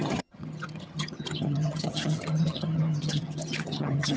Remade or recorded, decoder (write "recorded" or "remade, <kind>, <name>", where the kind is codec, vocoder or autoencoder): remade, vocoder, HiFi-GAN